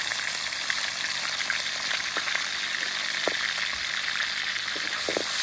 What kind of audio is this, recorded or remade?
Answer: recorded